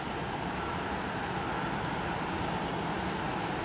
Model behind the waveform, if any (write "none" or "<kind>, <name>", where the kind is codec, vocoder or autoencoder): none